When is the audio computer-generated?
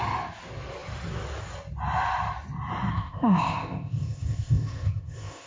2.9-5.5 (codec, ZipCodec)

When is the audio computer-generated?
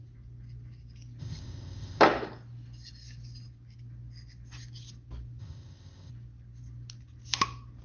1.2-2.0 (codec, ZipCodec); 5.4-6.1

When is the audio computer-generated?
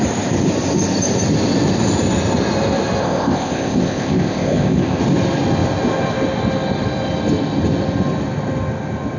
3.0-5.0 (codec, ZipCodec)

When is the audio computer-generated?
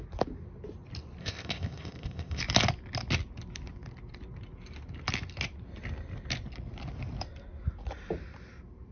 1.2-2.4 (codec, ZipCodec)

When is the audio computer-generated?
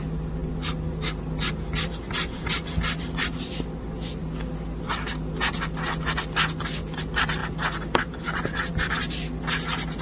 none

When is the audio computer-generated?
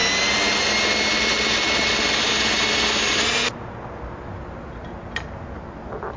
none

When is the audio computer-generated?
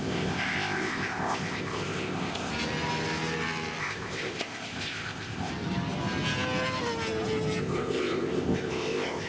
0.0-2.5 (codec, ZipCodec); 3.8-5.5; 7.6-9.3